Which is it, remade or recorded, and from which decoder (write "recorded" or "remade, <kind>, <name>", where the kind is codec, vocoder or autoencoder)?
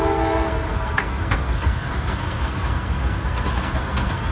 remade, codec, SNAC